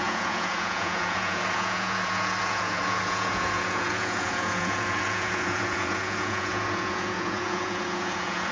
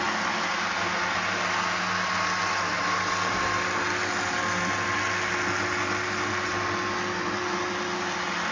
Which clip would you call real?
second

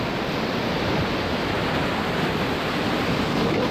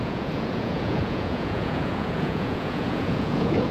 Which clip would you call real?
first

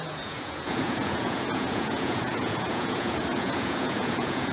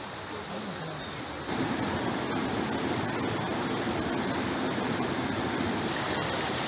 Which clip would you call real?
second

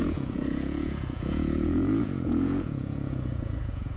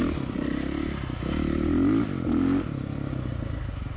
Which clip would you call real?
second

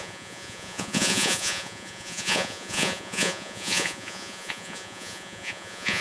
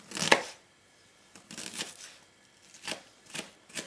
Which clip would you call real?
second